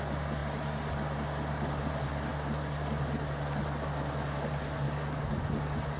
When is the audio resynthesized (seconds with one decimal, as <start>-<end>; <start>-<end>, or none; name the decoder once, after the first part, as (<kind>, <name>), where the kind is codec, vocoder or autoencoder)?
none